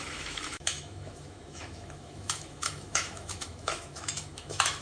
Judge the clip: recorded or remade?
remade